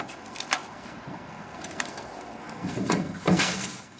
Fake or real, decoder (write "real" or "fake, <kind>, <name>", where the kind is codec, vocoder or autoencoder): fake, codec, SNAC